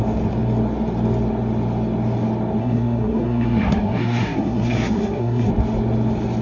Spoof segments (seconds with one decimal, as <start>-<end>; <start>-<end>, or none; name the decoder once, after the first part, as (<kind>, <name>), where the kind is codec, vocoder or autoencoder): 2.6-5.5 (codec, SNAC)